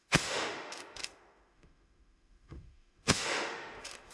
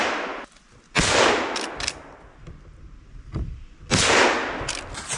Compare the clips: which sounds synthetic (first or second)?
first